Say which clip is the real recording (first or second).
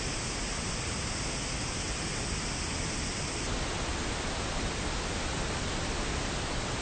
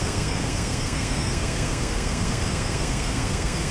first